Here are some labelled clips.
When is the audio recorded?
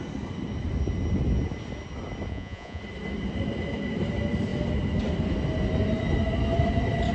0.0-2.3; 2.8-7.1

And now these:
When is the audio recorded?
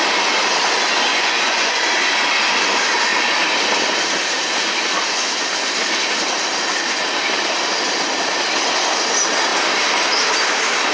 0.0-1.1; 1.8-10.9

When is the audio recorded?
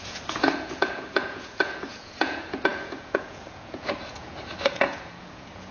none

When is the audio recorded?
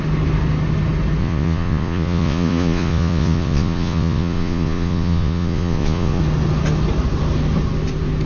0.0-1.2; 6.2-8.3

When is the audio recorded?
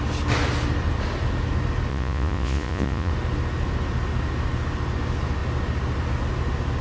0.0-1.9; 3.1-6.8